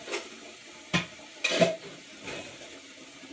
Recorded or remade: recorded